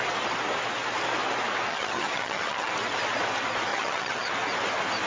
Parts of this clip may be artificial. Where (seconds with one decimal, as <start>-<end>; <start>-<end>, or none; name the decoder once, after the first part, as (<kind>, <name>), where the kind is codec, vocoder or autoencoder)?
1.7-2.7 (vocoder, HiFi-GAN); 3.7-4.3